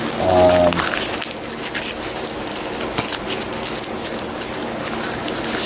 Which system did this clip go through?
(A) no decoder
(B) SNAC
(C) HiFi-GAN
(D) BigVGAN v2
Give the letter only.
A